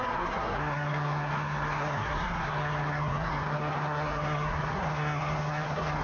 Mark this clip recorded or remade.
remade